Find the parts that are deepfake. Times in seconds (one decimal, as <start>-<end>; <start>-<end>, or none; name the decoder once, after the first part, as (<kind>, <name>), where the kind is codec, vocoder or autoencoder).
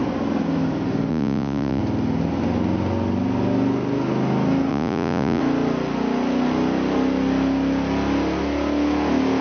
1.1-1.8 (vocoder, Vocos); 4.7-5.4